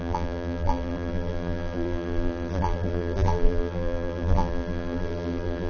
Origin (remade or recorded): remade